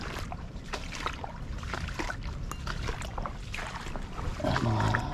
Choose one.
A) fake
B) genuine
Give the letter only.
B